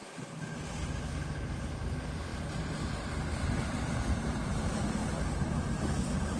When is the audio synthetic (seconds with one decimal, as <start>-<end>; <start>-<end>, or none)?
none